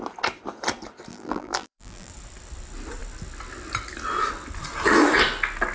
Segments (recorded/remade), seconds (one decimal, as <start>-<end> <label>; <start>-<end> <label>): 0.0-1.1 recorded; 1.1-2.1 remade; 2.1-5.7 recorded